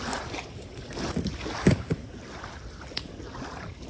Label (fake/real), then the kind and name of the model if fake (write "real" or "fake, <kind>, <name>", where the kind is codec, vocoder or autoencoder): real